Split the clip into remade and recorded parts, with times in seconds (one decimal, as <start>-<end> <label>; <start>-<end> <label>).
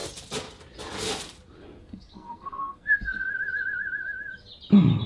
0.0-1.8 recorded; 1.8-3.3 remade; 3.3-5.1 recorded